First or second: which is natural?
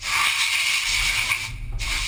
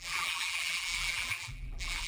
first